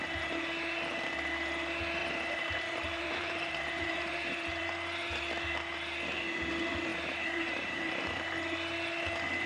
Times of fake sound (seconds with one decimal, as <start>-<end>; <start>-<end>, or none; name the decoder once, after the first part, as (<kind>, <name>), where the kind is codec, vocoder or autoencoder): 2.0-4.6 (vocoder, BigVGAN v2); 6.9-8.0